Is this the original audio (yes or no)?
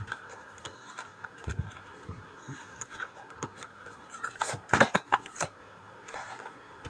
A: no